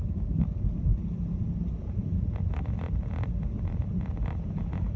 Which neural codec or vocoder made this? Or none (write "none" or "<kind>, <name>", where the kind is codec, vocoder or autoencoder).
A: none